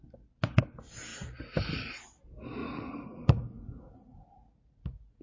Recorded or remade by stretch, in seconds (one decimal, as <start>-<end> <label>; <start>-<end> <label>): 0.0-2.6 recorded; 2.6-5.2 remade